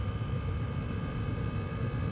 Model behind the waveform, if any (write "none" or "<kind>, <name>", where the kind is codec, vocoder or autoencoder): none